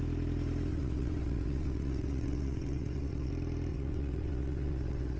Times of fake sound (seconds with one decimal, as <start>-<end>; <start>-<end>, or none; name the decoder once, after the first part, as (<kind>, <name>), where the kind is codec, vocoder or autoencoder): 0.7-3.3 (vocoder, WaveNeXt); 3.7-5.2